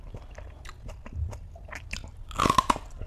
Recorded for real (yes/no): yes